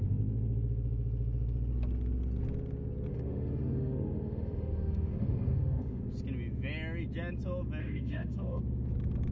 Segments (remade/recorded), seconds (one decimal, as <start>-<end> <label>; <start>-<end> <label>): 0.0-3.1 recorded; 3.1-6.0 remade; 6.0-7.8 recorded; 7.8-8.6 remade; 8.6-9.3 recorded